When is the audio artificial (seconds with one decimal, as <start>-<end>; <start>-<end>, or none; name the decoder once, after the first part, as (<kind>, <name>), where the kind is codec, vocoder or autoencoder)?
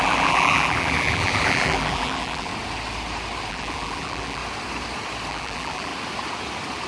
0.0-2.5 (vocoder, BigVGAN v2); 3.5-4.4; 5.3-5.9